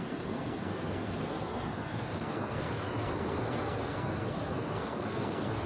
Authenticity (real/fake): fake